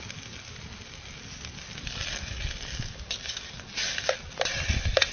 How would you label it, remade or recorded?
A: recorded